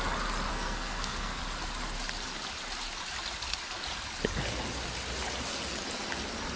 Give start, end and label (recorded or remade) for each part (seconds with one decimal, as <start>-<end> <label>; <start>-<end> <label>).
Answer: 0.0-0.5 recorded; 0.5-1.4 remade; 1.4-6.6 recorded